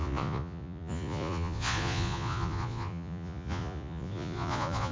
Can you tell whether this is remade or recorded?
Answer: remade